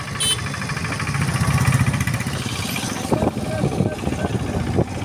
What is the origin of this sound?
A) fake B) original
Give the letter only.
B